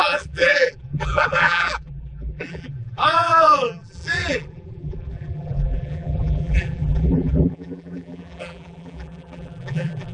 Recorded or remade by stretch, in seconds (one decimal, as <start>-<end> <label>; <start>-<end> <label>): 0.0-10.1 remade

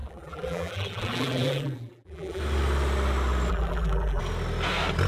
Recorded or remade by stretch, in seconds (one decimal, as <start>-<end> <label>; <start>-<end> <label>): 0.0-2.4 remade; 2.4-3.5 recorded; 3.5-4.2 remade; 4.2-5.1 recorded

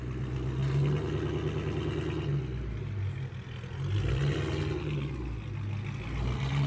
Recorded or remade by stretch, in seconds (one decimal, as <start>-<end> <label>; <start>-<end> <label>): 0.0-6.7 recorded

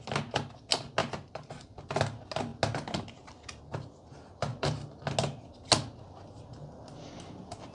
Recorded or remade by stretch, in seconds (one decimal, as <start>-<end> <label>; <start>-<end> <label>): 0.0-1.0 recorded; 1.0-1.8 remade; 1.8-4.5 recorded; 4.5-5.0 remade; 5.0-7.7 recorded

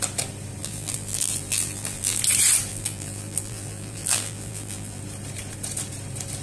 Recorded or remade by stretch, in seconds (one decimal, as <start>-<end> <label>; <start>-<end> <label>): 0.0-0.6 recorded; 0.6-2.2 remade; 2.2-2.7 recorded; 2.7-5.0 remade; 5.0-6.4 recorded

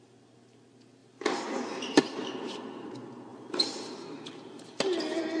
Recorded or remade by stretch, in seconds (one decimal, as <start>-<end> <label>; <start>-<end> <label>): 0.0-1.0 recorded; 1.0-2.9 remade; 2.9-3.3 recorded; 3.3-4.8 remade; 4.8-5.4 recorded

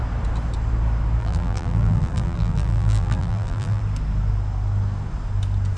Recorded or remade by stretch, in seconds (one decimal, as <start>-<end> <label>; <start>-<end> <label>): 0.0-1.2 recorded; 1.2-3.8 remade; 3.8-5.8 recorded

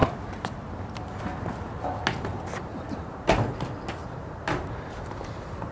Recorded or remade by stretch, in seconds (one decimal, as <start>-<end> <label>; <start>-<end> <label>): 0.0-2.3 recorded; 2.3-3.5 remade; 3.5-4.0 recorded; 4.0-5.7 remade